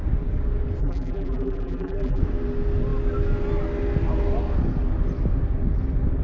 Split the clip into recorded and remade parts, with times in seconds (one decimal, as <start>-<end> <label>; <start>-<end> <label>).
0.0-0.8 recorded; 0.8-2.2 remade; 2.2-6.2 recorded